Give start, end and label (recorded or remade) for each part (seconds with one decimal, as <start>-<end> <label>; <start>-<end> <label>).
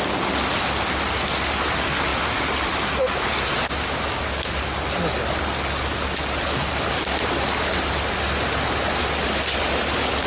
0.0-10.3 recorded